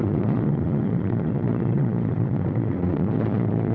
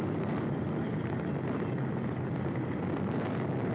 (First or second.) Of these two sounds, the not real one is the first